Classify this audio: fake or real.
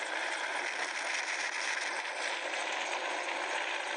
real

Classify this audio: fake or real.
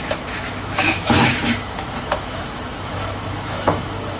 fake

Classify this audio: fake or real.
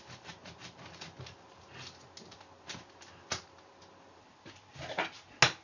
real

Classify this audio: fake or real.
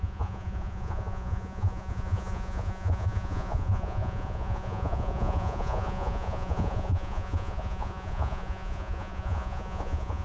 fake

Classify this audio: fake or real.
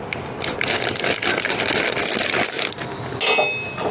real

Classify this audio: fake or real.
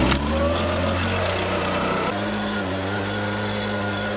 real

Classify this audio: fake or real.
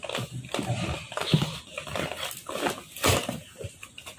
real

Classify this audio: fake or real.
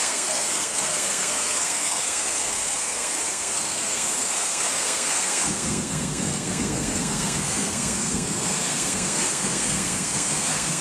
fake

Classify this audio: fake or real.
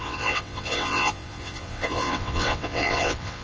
fake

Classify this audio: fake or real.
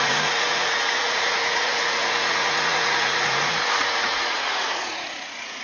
fake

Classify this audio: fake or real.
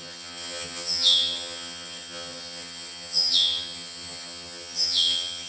fake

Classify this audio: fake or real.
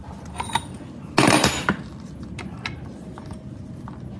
real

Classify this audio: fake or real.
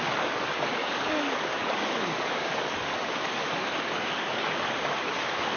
fake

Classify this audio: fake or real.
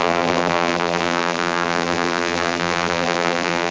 fake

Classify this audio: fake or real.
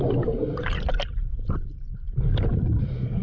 real